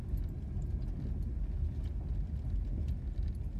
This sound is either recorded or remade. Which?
recorded